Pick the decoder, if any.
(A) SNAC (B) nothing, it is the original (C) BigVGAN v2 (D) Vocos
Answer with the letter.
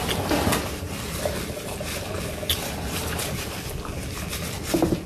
B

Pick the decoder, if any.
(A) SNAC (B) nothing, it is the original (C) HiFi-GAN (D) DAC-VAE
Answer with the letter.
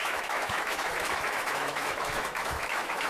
D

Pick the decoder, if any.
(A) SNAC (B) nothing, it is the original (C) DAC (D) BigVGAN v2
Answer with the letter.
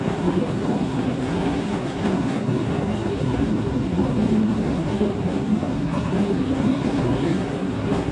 A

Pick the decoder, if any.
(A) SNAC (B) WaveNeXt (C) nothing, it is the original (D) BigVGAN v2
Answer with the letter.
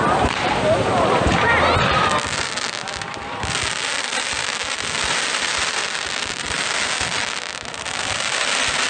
D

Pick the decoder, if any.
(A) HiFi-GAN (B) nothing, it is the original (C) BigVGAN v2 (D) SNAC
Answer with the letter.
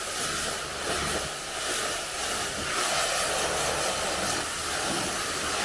B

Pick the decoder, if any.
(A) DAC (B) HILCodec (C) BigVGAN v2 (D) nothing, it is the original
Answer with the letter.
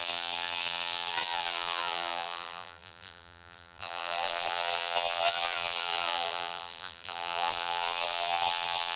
C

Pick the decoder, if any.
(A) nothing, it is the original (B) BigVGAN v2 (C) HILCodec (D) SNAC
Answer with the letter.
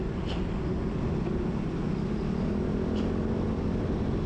A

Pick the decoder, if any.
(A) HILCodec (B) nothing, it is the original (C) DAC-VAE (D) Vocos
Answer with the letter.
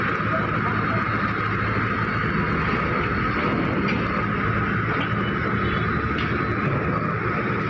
B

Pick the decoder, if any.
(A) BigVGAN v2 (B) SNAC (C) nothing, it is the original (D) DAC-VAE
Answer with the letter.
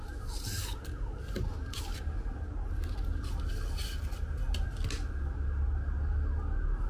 C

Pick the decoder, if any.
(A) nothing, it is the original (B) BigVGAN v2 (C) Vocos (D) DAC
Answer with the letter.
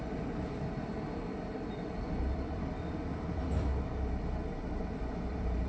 B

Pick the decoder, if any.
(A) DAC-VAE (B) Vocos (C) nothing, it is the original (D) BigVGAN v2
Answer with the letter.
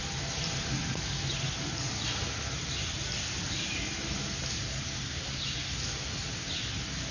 C